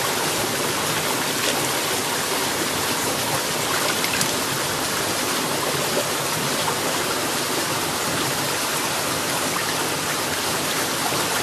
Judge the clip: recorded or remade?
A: recorded